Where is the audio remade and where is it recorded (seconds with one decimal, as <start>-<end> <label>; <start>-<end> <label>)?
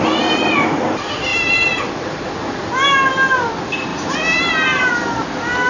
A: 0.0-5.7 recorded